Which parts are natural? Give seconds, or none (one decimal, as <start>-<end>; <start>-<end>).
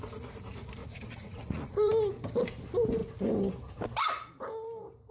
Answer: 0.0-0.8; 1.9-5.1